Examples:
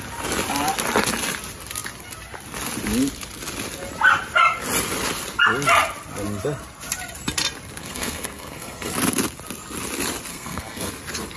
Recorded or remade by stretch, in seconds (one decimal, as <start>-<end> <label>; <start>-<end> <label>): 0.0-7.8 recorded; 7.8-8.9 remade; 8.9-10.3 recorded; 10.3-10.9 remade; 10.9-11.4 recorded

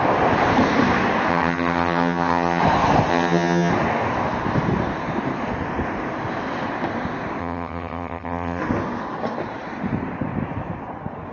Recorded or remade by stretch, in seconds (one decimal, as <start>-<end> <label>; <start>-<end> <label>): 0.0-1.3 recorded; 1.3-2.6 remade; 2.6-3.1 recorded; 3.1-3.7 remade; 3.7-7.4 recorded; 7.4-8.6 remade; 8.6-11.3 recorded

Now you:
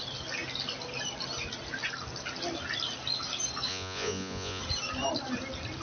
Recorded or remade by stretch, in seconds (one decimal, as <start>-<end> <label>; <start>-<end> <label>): 0.0-3.7 recorded; 3.7-4.6 remade; 4.6-5.8 recorded